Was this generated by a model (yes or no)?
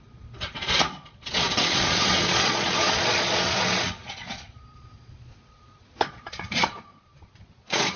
yes